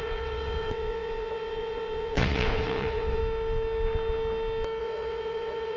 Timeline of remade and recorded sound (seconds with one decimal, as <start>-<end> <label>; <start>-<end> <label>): 0.0-3.2 remade; 3.2-4.8 recorded; 4.8-5.8 remade